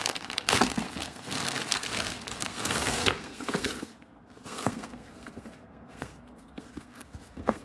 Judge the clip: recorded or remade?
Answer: remade